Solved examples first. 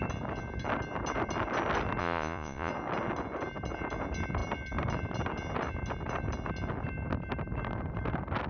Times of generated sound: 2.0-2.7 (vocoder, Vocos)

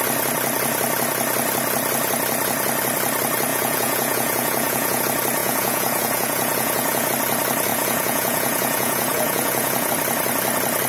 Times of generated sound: 3.5-5.0 (vocoder, Vocos); 5.4-7.1; 7.7-9.9

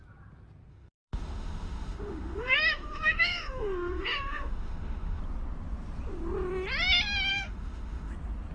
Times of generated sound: 0.7-5.2 (autoencoder, DAC-VAE); 7.3-8.1

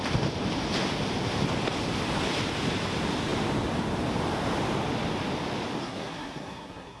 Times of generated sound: 5.8-7.0 (codec, SNAC)

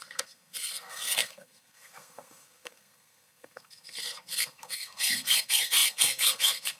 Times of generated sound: 0.0-6.8 (codec, SNAC)

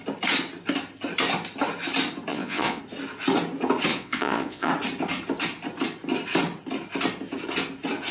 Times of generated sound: 2.3-2.8 (vocoder, Vocos); 3.9-4.7

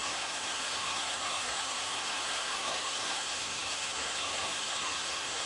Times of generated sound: 0.0-5.5 (codec, SNAC)

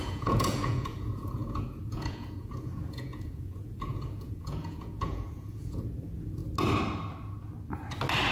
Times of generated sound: 0.0-6.4 (vocoder, Vocos)